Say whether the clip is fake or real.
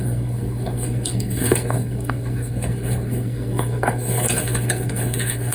fake